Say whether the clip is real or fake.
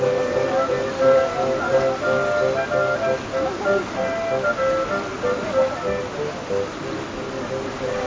real